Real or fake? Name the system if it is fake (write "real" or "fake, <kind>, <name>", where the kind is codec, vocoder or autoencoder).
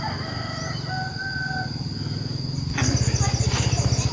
real